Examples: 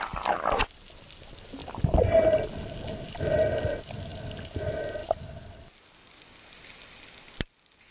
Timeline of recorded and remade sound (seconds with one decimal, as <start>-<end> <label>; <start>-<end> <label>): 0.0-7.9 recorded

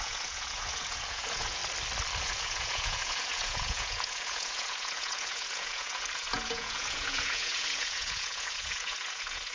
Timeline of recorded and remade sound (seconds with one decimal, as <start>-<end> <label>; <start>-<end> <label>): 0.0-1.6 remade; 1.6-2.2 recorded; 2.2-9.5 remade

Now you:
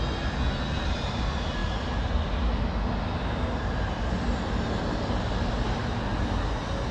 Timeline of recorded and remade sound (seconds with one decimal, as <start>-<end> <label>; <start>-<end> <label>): 0.0-6.9 recorded